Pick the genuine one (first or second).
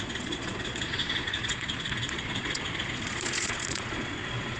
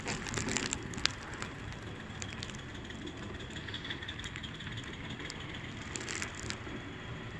second